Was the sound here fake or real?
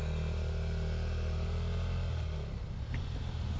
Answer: real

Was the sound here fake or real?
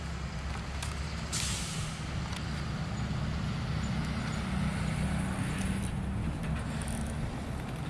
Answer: real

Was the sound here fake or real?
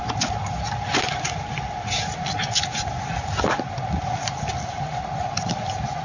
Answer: real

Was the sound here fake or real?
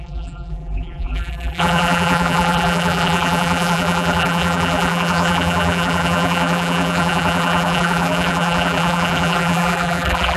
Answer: fake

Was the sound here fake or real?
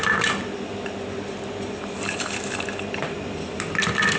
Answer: real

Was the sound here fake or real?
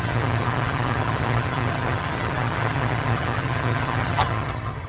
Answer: fake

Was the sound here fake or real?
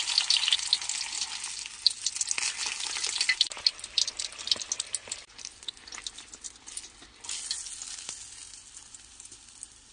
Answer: real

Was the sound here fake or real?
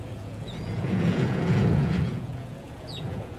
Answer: fake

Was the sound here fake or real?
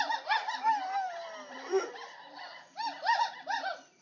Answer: fake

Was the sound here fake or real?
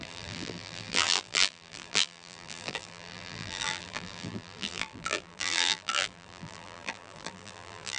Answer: fake